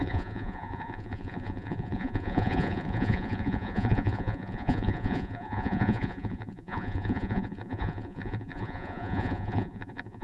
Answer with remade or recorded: remade